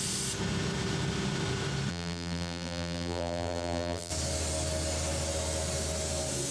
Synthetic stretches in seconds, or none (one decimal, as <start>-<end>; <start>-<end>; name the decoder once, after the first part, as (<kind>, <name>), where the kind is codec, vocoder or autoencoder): 1.9-4.1 (vocoder, BigVGAN v2)